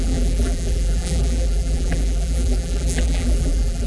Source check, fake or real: fake